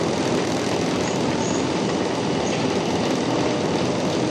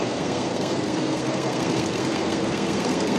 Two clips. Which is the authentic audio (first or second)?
first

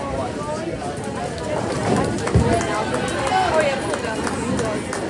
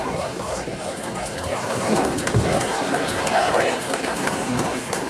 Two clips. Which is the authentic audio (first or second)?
first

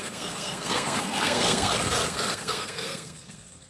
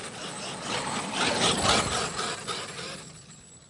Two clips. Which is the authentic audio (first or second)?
second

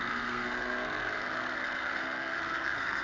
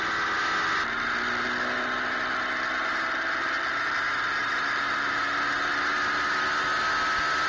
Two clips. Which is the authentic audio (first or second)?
second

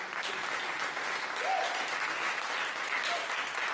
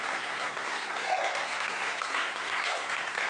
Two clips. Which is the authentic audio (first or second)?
first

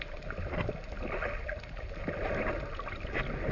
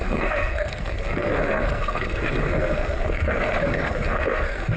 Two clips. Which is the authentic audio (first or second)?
first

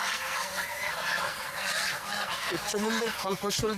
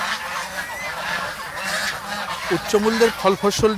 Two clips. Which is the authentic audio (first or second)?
second